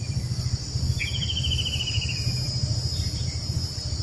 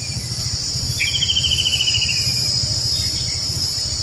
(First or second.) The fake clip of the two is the second